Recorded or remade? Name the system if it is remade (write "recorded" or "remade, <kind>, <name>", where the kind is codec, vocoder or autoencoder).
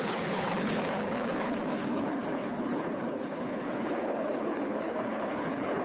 remade, codec, HILCodec